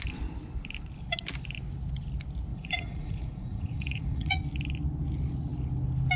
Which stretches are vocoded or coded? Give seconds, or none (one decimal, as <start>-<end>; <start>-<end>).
2.5-4.4